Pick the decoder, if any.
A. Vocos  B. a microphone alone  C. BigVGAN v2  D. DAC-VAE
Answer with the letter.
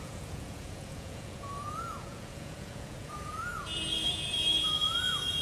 A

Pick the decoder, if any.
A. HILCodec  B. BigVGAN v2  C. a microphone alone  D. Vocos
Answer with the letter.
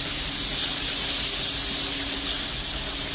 C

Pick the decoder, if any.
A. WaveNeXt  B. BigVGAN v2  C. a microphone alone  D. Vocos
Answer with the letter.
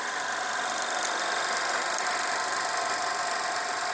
C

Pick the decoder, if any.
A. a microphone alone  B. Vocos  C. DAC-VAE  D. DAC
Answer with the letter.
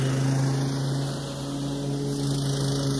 A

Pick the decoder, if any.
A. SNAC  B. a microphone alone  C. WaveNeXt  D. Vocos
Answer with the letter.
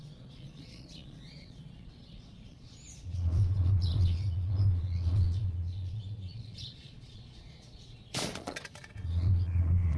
D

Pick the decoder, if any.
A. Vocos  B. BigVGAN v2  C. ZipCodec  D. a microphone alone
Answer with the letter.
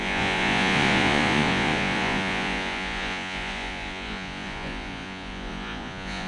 A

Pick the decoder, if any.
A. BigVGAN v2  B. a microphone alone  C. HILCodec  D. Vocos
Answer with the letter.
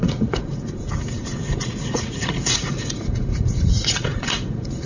D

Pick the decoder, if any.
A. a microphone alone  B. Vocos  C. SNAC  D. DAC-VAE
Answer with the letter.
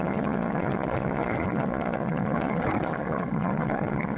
B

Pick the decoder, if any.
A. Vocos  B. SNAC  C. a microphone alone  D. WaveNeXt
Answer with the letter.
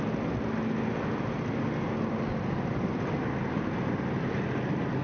C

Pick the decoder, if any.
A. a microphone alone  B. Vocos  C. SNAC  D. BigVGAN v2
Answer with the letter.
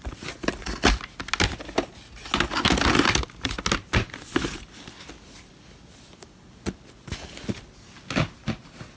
A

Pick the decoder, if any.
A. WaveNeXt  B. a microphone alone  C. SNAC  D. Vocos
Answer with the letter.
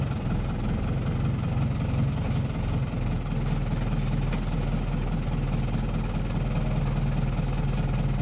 B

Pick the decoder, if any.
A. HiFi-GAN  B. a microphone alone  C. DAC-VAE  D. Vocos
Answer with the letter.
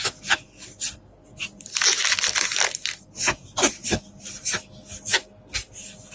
B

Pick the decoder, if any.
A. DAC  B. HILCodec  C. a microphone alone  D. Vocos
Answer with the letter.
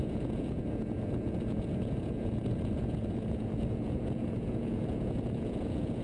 D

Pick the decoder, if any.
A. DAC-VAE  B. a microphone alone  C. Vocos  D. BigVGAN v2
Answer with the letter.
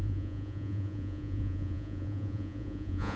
C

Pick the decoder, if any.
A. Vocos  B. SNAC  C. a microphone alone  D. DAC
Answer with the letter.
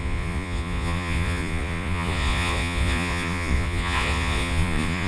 A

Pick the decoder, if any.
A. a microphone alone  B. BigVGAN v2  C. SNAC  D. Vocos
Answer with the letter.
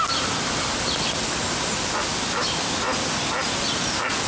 A